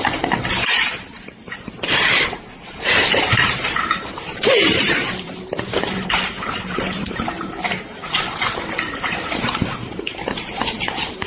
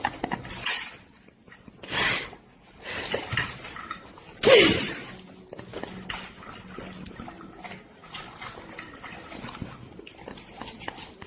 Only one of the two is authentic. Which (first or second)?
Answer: second